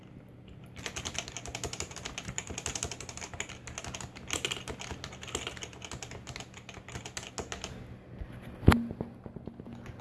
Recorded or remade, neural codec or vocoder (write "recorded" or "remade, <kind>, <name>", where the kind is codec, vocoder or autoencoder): recorded